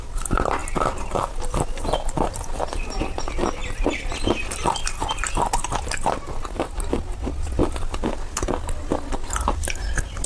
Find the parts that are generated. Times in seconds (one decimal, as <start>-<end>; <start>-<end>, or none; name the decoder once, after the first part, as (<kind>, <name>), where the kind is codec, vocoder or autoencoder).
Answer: none